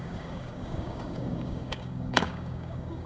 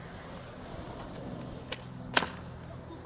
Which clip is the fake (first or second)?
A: first